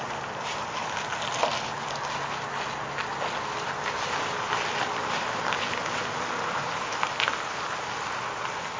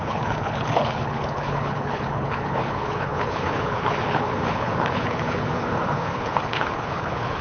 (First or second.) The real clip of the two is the first